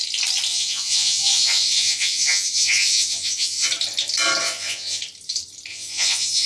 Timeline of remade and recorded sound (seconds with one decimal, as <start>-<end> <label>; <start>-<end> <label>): 0.0-0.5 recorded; 0.5-3.7 remade; 3.7-4.4 recorded; 4.4-5.0 remade; 5.0-5.7 recorded; 5.7-6.5 remade

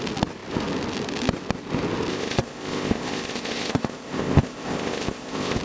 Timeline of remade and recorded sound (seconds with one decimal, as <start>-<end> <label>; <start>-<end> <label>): 0.0-2.1 recorded; 2.1-5.6 remade

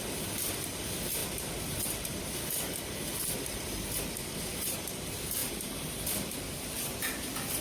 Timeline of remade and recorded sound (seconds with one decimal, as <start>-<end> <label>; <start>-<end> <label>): 0.0-1.2 recorded; 1.2-1.8 remade; 1.8-5.4 recorded; 5.4-7.6 remade

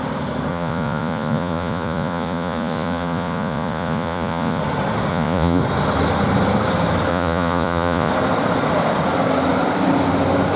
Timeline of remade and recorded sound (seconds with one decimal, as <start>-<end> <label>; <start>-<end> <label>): 0.0-0.5 recorded; 0.5-4.6 remade; 4.6-5.1 recorded; 5.1-5.6 remade; 5.6-7.1 recorded; 7.1-8.1 remade; 8.1-10.6 recorded

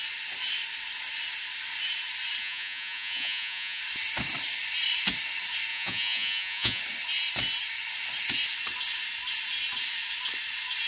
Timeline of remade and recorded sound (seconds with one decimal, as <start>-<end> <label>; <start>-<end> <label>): 0.0-2.4 recorded; 2.4-3.8 remade; 3.8-5.7 recorded; 5.7-6.8 remade; 6.8-10.9 recorded

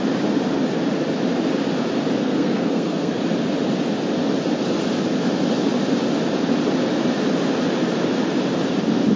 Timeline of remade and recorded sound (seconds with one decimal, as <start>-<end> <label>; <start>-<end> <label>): 0.0-2.2 recorded; 2.2-3.2 remade; 3.2-9.2 recorded